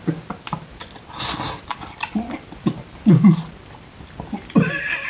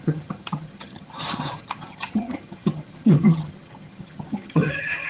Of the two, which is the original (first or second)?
first